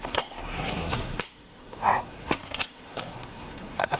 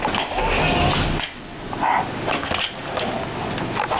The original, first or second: second